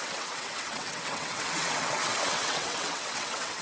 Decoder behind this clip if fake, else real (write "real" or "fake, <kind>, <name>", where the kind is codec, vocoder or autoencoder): fake, vocoder, WaveNeXt